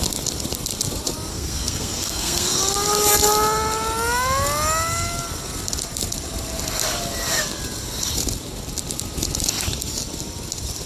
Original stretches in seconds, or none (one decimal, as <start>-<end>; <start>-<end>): 0.0-1.3; 2.6-10.9